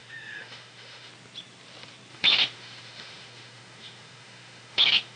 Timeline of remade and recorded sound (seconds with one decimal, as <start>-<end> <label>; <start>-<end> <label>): 0.0-1.1 remade; 1.1-2.1 recorded; 2.1-5.2 remade